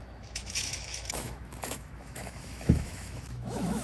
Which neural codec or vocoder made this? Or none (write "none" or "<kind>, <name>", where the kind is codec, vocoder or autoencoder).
autoencoder, DAC-VAE